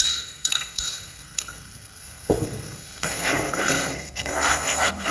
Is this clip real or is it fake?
fake